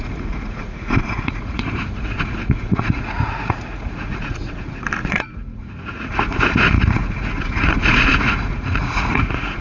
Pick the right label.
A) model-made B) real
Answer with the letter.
A